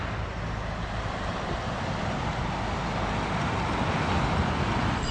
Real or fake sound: real